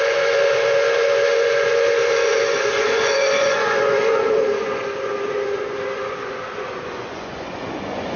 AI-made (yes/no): yes